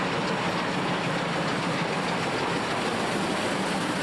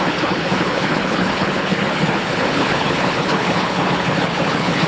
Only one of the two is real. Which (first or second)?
first